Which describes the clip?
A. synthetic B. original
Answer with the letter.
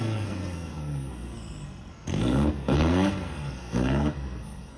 A